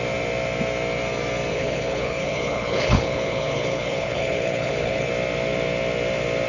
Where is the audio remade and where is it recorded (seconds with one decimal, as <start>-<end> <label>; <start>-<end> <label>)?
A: 0.0-1.5 recorded; 1.5-5.1 remade; 5.1-6.5 recorded